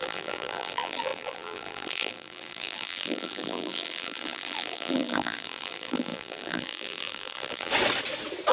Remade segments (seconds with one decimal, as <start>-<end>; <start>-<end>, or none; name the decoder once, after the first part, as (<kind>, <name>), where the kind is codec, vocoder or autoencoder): 0.0-7.7 (vocoder, BigVGAN v2)